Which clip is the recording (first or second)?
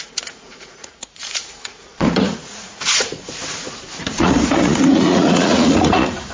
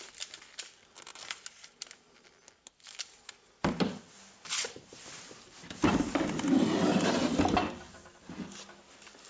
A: second